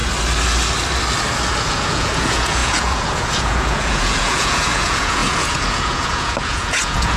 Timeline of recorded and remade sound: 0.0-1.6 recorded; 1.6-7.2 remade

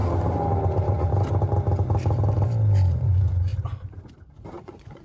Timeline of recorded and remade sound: 0.0-3.0 recorded; 3.0-3.5 remade; 3.5-4.6 recorded; 4.6-5.0 remade

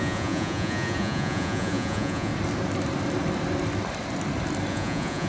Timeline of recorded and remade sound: 0.0-2.3 remade; 2.3-4.7 recorded; 4.7-5.3 remade

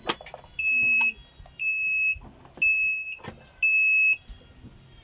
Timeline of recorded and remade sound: 0.0-5.0 recorded

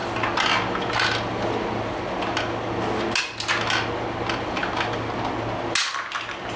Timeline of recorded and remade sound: 0.0-6.6 recorded